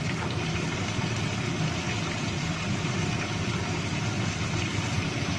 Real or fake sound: real